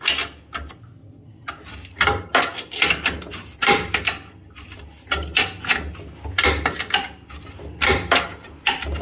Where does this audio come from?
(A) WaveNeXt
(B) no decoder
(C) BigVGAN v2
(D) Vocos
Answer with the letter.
B